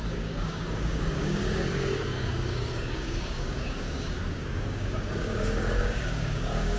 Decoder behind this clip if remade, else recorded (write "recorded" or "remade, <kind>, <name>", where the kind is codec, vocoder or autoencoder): remade, codec, DAC